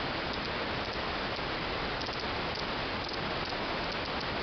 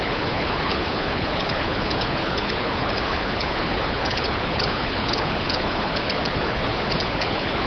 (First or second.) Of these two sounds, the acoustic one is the first